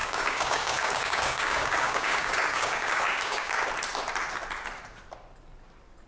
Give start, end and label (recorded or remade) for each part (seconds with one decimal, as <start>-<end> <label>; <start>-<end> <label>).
0.0-3.7 remade; 3.7-6.1 recorded